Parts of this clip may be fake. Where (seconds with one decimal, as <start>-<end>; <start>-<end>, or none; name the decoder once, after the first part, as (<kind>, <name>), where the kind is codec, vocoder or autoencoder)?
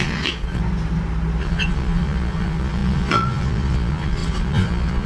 0.0-0.6 (vocoder, Vocos); 1.4-5.1